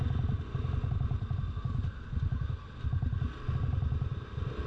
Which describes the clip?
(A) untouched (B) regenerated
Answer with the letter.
A